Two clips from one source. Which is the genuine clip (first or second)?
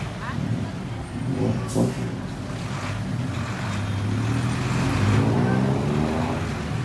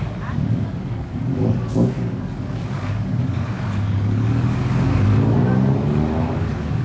first